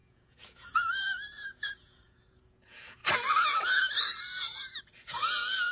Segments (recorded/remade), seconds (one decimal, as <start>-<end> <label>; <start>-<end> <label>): 0.0-3.0 remade; 3.0-5.0 recorded; 5.0-5.7 remade

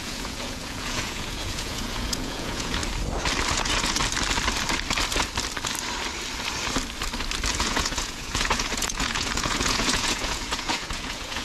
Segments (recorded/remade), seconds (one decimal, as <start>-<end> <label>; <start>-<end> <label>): 0.0-2.8 remade; 2.8-3.5 recorded; 3.5-4.0 remade; 4.0-7.5 recorded; 7.5-11.4 remade

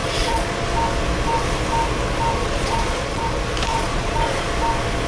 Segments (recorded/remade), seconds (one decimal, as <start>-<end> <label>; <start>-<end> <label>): 0.0-0.7 remade; 0.7-2.4 recorded; 2.4-3.2 remade; 3.2-3.7 recorded; 3.7-4.5 remade; 4.5-5.1 recorded